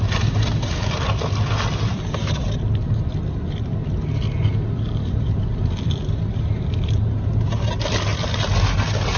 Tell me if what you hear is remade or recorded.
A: recorded